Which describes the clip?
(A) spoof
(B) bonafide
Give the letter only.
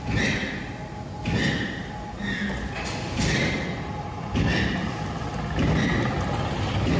B